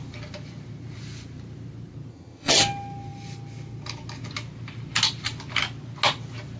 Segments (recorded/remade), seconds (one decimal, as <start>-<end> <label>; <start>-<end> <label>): 0.0-2.1 recorded; 2.1-2.6 remade; 2.6-6.6 recorded